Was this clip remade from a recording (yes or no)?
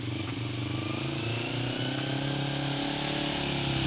no